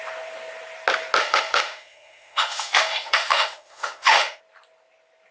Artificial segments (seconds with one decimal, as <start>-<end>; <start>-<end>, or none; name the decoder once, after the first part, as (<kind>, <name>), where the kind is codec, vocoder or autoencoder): 1.2-4.4 (autoencoder, DAC-VAE)

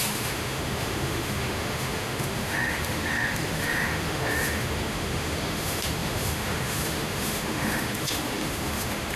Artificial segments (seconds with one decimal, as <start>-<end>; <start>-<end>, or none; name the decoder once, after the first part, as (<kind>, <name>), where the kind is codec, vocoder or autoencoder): 0.0-9.2 (autoencoder, DAC-VAE)

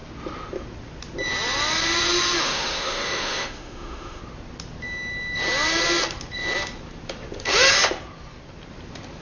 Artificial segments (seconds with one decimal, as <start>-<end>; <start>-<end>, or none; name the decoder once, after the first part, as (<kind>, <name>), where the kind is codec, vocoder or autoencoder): 2.4-4.2 (autoencoder, DAC-VAE)

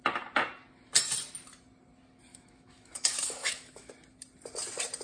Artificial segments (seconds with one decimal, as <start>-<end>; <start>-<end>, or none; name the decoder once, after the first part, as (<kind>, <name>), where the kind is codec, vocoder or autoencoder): 2.3-3.9 (autoencoder, DAC-VAE)